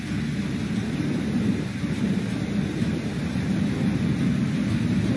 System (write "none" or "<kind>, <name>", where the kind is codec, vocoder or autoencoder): none